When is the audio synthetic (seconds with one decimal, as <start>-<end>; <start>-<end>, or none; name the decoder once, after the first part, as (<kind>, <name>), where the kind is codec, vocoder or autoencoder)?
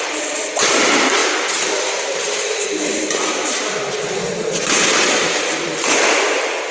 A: none